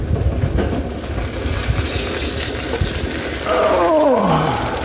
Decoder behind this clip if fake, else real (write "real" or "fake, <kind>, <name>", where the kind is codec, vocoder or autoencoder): real